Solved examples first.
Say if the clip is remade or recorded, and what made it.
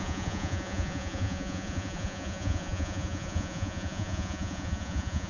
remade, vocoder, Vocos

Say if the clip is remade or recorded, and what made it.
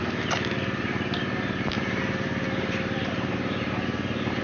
recorded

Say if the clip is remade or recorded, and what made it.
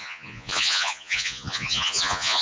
remade, vocoder, Vocos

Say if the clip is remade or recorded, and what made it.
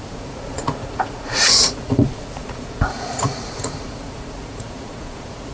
remade, vocoder, Vocos